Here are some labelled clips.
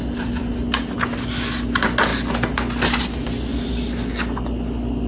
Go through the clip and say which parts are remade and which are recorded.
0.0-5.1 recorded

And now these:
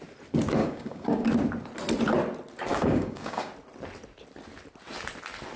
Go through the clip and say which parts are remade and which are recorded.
0.0-0.6 recorded; 0.6-1.3 remade; 1.3-2.7 recorded; 2.7-3.5 remade; 3.5-5.6 recorded

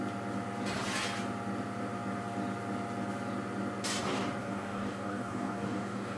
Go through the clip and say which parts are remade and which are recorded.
0.0-4.4 recorded; 4.4-6.2 remade

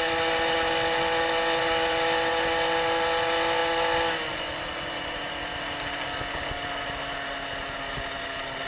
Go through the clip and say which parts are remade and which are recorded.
0.0-8.7 recorded